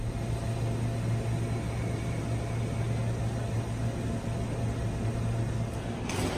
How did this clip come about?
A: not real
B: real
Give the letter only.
B